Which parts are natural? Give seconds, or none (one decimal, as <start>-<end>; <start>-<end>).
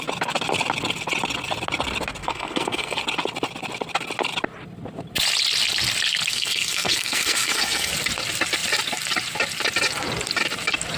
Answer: 0.0-2.2; 3.0-6.3; 7.9-11.0